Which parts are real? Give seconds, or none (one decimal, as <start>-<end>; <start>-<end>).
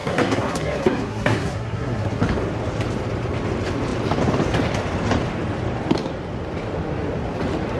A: 2.2-7.8